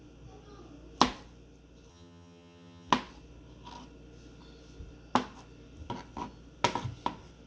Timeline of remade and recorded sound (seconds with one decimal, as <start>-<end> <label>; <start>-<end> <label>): 0.0-1.9 recorded; 1.9-2.9 remade; 2.9-7.5 recorded